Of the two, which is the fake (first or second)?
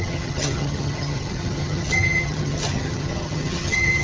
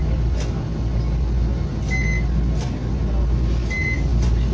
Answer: first